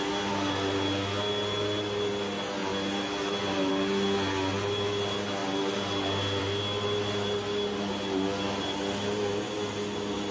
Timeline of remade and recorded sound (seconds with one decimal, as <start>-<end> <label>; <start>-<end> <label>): 0.0-10.3 recorded